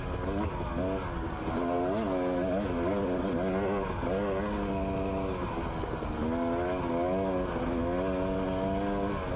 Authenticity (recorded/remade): recorded